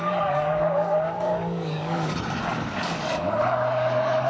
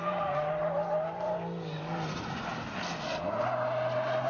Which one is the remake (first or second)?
first